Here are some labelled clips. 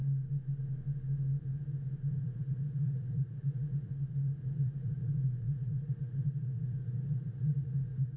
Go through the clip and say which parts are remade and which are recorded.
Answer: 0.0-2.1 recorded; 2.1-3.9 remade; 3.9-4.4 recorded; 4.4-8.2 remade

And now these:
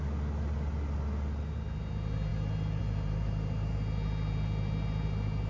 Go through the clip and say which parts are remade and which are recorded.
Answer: 0.0-5.5 recorded

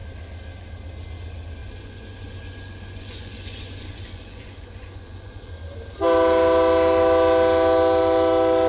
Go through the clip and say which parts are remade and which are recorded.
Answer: 0.0-1.6 recorded; 1.6-5.5 remade; 5.5-8.7 recorded

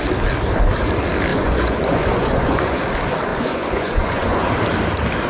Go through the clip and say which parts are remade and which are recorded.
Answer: 0.0-1.3 recorded; 1.3-2.8 remade; 2.8-3.3 recorded; 3.3-4.5 remade; 4.5-5.3 recorded